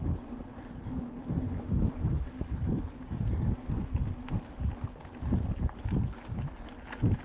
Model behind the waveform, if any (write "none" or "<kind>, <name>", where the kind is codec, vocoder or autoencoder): none